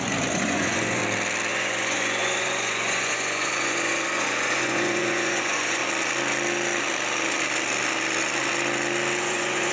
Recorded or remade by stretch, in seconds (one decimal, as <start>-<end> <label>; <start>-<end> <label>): 0.0-1.0 remade; 1.0-1.5 recorded; 1.5-5.8 remade; 5.8-9.2 recorded; 9.2-9.7 remade